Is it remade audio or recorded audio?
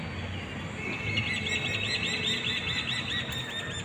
recorded